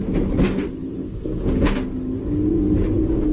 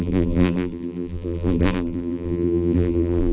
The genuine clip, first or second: first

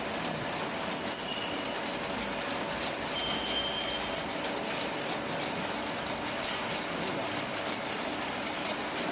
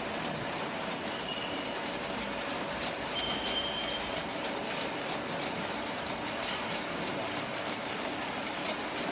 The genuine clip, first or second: first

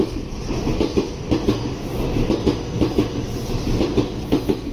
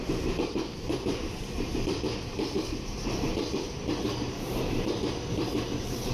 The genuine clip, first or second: first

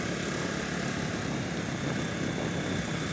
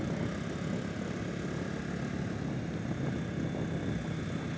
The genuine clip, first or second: second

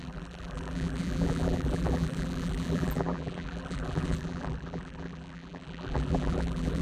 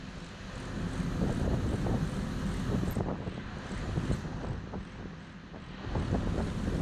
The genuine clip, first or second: second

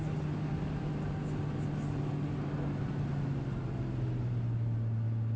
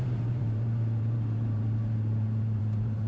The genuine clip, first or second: first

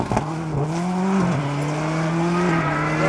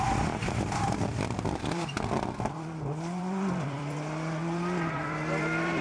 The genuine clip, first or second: first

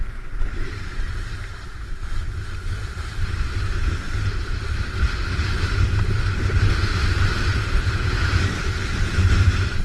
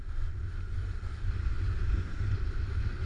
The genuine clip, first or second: second